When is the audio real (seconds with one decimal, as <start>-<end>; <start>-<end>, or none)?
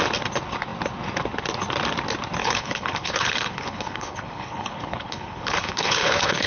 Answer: 0.0-2.4